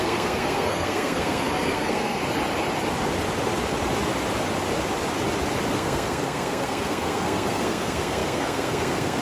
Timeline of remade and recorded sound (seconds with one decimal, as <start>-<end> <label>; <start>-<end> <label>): 0.0-2.2 remade; 2.2-5.7 recorded; 5.7-9.2 remade